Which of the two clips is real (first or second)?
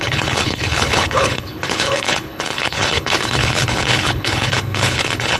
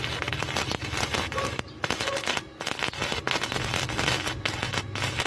second